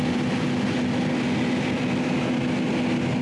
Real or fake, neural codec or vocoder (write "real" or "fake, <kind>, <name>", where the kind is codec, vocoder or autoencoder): real